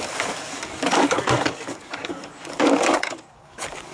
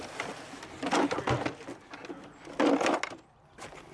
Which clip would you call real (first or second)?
second